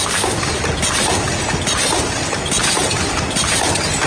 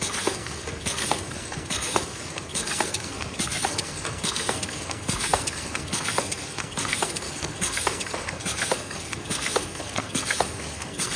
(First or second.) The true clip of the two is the first